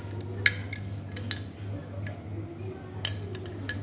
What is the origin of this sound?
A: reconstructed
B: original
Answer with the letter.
B